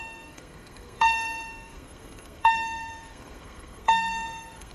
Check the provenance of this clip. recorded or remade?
remade